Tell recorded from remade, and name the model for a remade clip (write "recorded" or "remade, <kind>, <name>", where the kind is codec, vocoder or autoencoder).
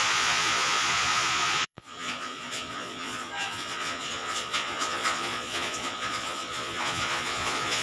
remade, vocoder, Vocos